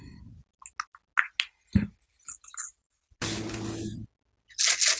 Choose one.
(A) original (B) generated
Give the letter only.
A